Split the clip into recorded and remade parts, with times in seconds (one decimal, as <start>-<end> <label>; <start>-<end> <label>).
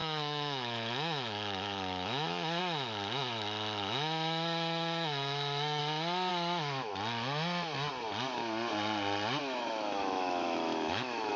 0.0-5.8 remade; 5.8-6.3 recorded; 6.3-6.9 remade; 6.9-9.4 recorded; 9.4-11.4 remade